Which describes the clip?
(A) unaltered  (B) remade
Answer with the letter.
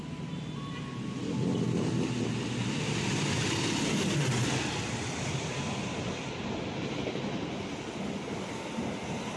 A